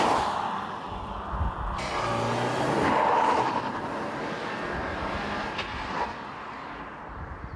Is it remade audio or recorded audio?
recorded